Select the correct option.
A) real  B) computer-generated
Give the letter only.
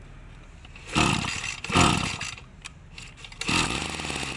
A